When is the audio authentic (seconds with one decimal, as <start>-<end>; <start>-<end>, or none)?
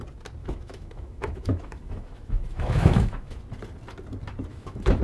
0.0-0.4; 3.4-4.5